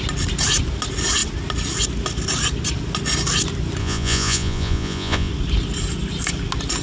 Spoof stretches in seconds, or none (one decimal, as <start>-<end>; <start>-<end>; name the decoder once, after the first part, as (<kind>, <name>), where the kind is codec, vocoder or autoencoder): 3.8-5.3 (vocoder, Vocos)